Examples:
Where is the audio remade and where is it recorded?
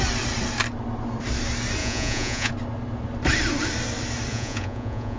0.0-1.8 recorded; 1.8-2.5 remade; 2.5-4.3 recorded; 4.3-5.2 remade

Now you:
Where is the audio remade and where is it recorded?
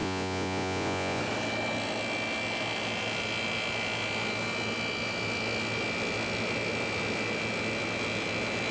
0.0-1.2 remade; 1.2-8.7 recorded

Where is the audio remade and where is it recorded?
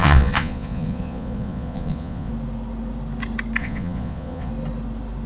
0.0-2.3 remade; 2.3-3.6 recorded; 3.6-4.5 remade; 4.5-5.3 recorded